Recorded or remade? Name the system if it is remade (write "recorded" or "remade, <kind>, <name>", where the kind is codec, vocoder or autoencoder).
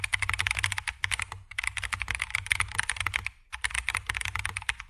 recorded